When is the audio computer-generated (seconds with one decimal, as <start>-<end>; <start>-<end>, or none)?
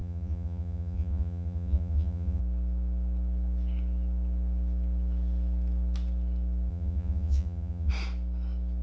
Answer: 0.0-2.4; 6.7-7.9